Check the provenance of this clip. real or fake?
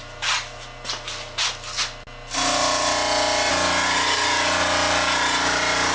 real